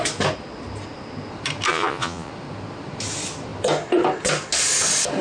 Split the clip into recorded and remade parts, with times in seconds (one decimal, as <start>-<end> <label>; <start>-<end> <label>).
0.0-1.7 recorded; 1.7-2.3 remade; 2.3-5.2 recorded